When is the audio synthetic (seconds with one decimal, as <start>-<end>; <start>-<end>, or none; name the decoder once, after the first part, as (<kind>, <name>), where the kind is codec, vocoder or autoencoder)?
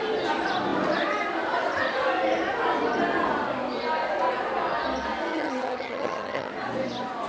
5.3-6.5 (vocoder, HiFi-GAN)